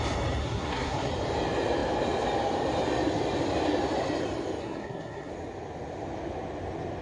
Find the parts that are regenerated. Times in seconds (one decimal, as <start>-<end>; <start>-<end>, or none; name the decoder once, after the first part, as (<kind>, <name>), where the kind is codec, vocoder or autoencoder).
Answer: 0.4-1.1 (codec, SNAC); 4.6-5.3